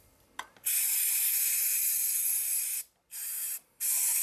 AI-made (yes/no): no